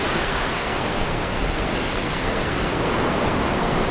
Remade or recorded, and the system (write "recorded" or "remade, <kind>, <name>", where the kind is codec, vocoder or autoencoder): remade, codec, SNAC